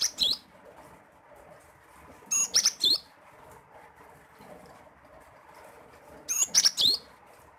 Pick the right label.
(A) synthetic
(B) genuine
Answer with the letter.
B